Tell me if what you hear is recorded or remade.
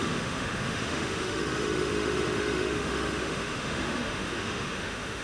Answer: remade